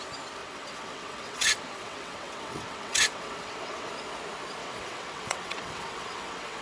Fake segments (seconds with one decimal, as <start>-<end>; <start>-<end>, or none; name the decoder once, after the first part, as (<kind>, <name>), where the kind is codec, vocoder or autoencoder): 0.4-3.9 (vocoder, WaveNeXt); 4.6-6.6